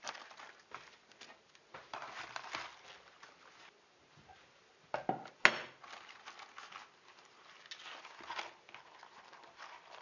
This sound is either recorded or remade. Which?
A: recorded